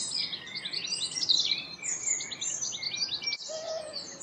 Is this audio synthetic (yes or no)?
no